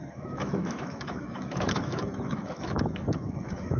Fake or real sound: fake